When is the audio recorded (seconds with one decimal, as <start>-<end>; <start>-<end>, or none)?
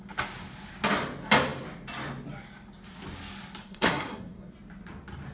0.0-3.6; 4.5-5.3